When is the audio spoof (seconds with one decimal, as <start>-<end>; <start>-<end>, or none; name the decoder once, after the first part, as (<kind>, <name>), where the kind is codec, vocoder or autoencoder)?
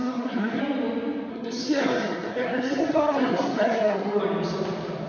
0.0-0.6 (codec, SNAC); 1.3-4.2